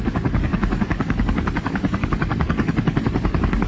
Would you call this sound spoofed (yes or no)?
yes